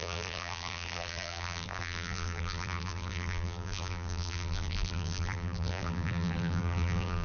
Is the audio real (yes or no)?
no